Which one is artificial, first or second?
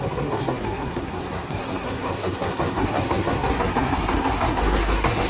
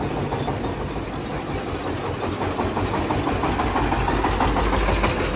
first